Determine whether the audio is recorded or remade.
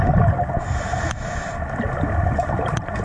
recorded